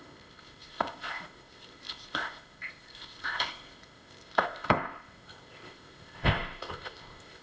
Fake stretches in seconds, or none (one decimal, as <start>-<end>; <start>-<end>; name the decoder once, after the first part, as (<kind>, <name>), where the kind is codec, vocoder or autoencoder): 0.0-7.4 (codec, ZipCodec)